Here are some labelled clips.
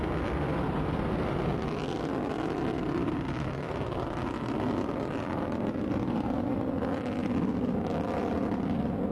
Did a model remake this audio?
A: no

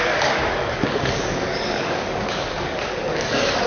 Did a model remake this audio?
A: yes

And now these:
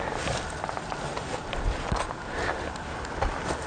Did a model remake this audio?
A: no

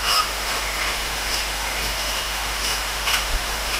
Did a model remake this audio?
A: yes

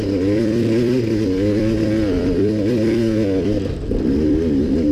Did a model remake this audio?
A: yes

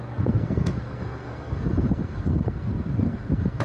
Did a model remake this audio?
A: yes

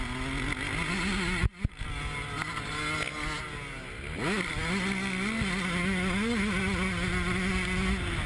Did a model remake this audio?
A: no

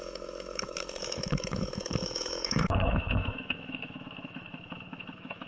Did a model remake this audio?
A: yes